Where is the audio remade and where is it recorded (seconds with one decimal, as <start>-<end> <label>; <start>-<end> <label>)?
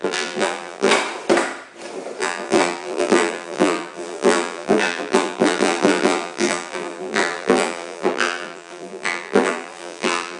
0.0-0.9 remade; 0.9-2.2 recorded; 2.2-10.4 remade